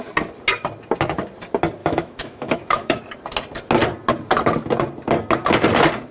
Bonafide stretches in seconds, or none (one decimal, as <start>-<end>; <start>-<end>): 0.0-1.8; 3.0-6.1